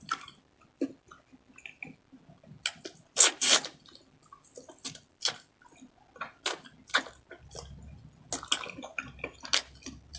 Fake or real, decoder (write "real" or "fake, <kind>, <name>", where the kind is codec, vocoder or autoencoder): real